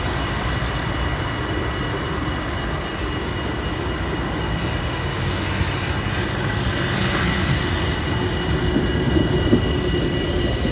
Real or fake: real